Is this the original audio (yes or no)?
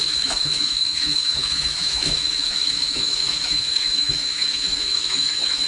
no